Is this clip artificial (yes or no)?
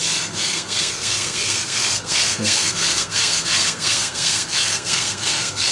yes